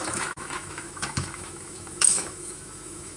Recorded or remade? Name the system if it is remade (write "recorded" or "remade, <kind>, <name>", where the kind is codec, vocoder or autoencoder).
remade, autoencoder, DAC-VAE